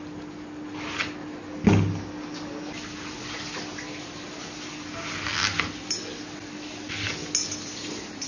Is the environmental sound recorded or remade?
recorded